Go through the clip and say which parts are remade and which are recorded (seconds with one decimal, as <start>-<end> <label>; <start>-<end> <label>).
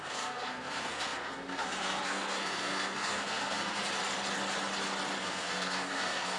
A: 0.0-3.8 remade; 3.8-5.2 recorded; 5.2-6.4 remade